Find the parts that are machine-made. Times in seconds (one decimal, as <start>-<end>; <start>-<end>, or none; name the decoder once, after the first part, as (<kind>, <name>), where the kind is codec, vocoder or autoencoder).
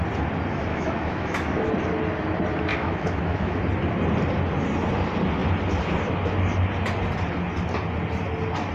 0.7-1.7 (autoencoder, DAC-VAE); 2.7-3.6